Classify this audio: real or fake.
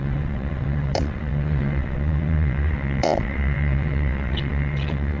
fake